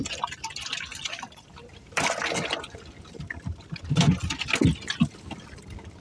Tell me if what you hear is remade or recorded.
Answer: recorded